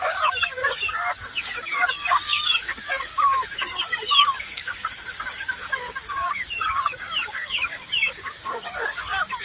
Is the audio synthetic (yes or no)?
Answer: yes